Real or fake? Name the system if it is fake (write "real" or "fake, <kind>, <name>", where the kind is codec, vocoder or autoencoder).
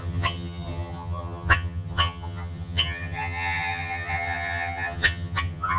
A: fake, vocoder, HiFi-GAN